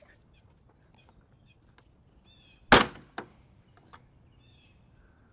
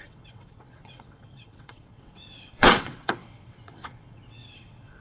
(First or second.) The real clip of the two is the first